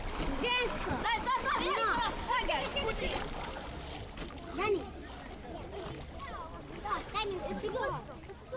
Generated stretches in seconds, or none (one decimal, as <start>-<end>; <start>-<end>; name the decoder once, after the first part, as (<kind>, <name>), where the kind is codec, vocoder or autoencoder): none